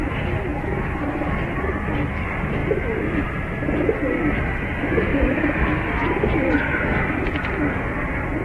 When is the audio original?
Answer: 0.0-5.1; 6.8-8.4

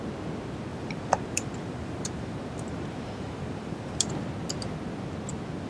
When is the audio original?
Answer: 0.0-0.7; 4.1-5.7